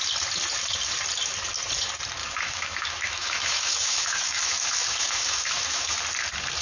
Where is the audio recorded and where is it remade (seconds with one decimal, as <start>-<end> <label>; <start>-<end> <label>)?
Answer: 0.0-2.2 recorded; 2.2-6.0 remade; 6.0-6.6 recorded